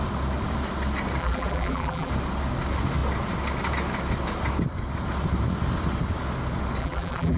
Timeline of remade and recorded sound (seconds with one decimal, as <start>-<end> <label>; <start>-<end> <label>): 0.0-1.2 recorded; 1.2-2.1 remade; 2.1-6.8 recorded; 6.8-7.4 remade